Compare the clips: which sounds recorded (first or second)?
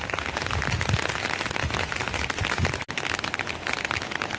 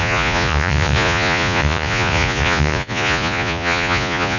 first